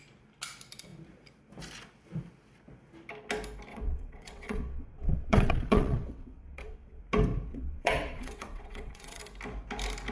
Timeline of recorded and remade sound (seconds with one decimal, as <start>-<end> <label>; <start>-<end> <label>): 0.0-3.7 recorded; 3.7-7.0 remade; 7.0-7.5 recorded; 7.5-9.2 remade; 9.2-10.1 recorded